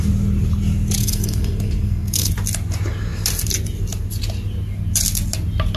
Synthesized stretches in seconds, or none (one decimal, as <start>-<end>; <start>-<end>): 1.0-2.3